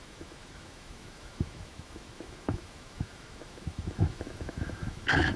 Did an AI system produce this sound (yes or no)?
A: yes